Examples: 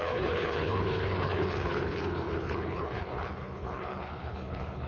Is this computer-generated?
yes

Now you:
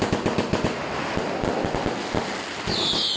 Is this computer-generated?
no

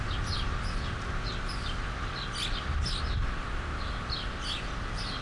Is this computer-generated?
no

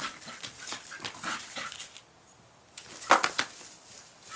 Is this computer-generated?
no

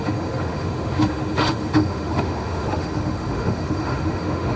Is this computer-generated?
yes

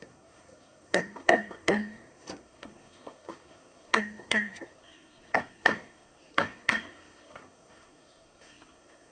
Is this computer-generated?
yes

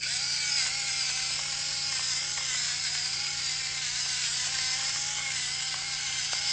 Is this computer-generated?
no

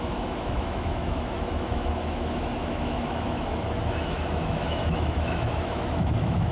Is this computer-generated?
yes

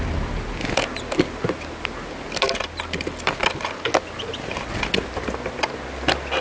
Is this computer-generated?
no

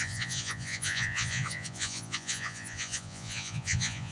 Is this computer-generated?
yes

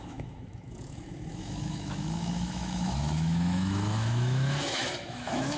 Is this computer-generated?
yes